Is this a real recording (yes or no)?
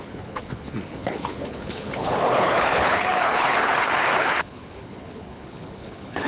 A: no